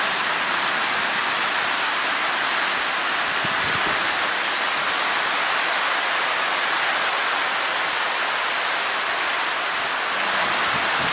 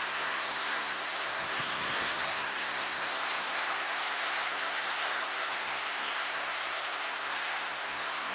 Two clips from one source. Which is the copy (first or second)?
second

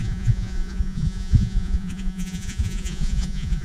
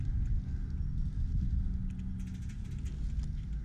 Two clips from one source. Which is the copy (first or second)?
first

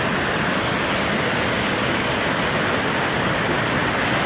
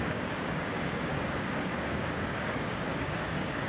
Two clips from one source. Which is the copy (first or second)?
second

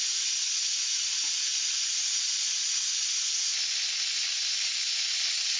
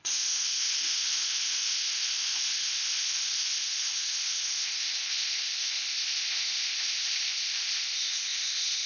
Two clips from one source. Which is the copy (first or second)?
second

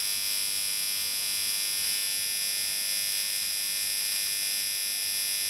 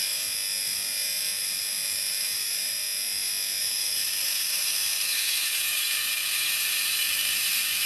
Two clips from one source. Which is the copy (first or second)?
second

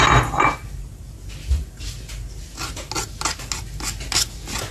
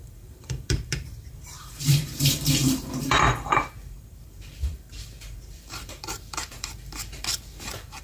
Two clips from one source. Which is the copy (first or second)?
second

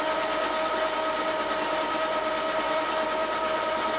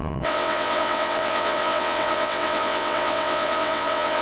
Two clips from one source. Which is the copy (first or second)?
second